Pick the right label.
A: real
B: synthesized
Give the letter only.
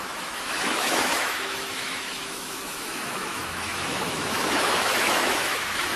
B